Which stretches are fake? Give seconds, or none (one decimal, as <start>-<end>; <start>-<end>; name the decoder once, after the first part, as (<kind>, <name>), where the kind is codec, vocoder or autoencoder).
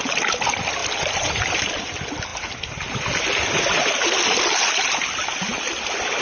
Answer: none